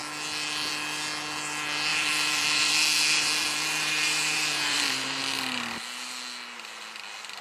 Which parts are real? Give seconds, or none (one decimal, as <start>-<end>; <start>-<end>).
0.0-1.9; 5.2-7.4